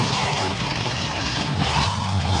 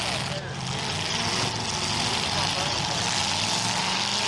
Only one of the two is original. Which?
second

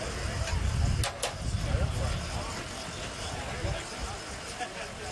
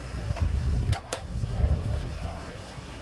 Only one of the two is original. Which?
first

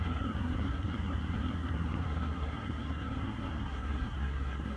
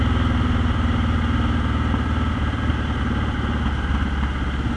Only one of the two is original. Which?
second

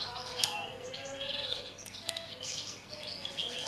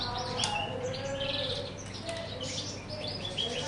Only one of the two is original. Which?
second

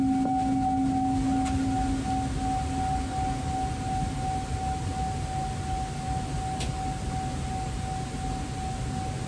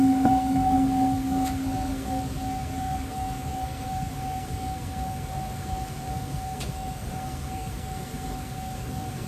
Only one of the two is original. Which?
first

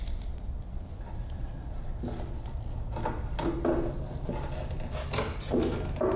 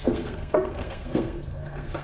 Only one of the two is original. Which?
first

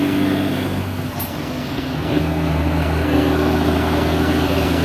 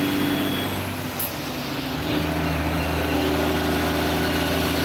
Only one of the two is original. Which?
second